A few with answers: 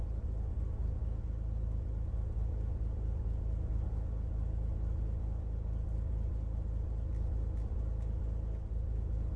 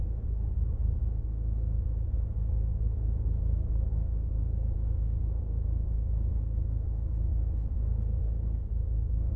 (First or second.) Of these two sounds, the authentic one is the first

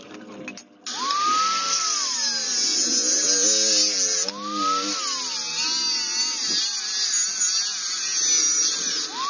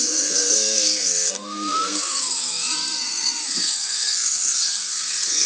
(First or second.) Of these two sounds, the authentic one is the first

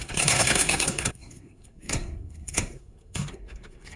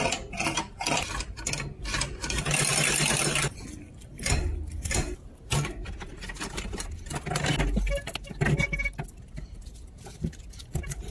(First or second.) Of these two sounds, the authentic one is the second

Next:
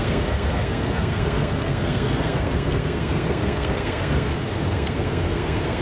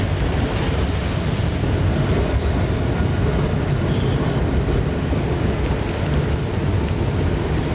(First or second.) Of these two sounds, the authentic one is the second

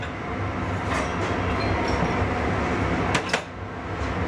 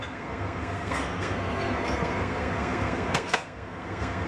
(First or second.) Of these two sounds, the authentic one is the first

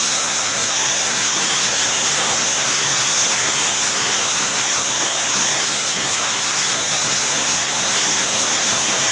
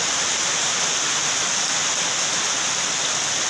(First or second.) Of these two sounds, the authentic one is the second